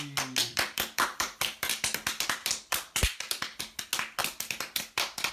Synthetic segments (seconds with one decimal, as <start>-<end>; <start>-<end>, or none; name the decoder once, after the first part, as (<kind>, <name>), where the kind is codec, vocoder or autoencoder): 0.4-3.6 (vocoder, BigVGAN v2); 4.2-5.3